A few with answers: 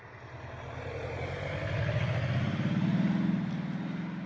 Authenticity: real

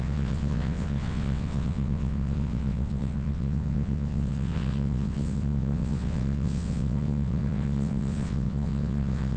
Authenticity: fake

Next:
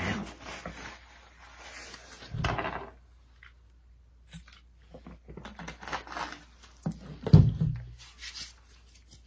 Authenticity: real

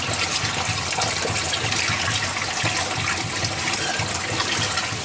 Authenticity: real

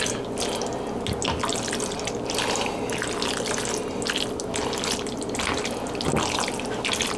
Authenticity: real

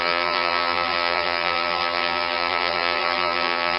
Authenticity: fake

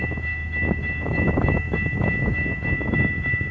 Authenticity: fake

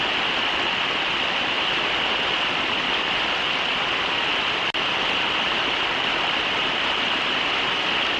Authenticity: real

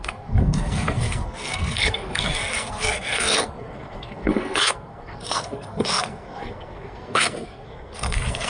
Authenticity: fake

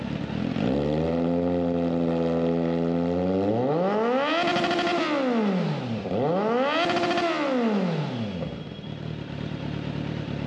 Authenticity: real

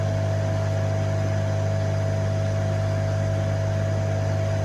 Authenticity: real